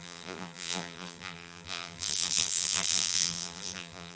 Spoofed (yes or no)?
yes